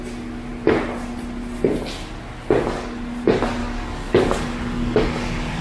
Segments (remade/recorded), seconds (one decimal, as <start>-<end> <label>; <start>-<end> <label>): 0.0-3.6 recorded; 3.6-5.6 remade